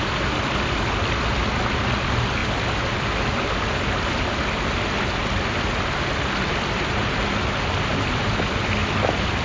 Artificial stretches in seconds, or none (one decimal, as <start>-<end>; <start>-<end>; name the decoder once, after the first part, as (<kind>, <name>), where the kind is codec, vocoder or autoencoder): none